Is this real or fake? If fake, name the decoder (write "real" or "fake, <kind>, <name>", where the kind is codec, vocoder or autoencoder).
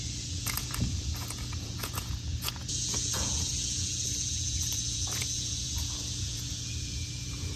fake, vocoder, Vocos